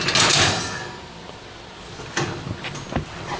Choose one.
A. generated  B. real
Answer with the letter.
B